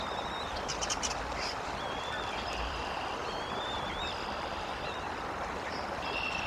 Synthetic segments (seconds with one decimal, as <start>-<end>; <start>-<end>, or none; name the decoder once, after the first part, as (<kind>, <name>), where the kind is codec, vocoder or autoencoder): 0.0-6.5 (vocoder, BigVGAN v2)